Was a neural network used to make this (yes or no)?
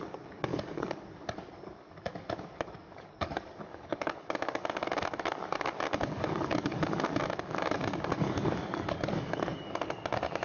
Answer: yes